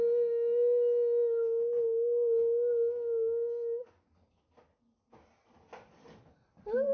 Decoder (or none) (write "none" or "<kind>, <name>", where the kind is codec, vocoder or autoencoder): none